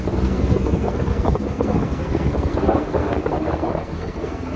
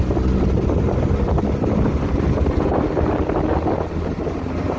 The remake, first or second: first